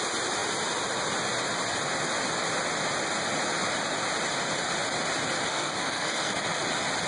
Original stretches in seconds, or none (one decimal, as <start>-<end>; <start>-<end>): 0.0-5.5; 6.6-7.1

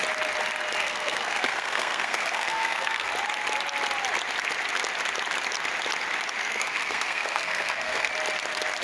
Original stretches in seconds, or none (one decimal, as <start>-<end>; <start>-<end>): 0.0-0.8; 3.1-6.4; 8.1-8.8